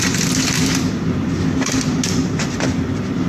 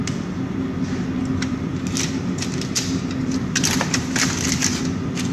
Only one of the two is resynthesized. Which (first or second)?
first